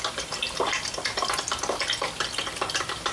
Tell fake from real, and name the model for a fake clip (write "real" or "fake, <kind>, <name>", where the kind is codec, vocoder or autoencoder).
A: real